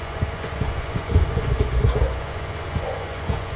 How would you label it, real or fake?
fake